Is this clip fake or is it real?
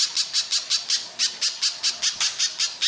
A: real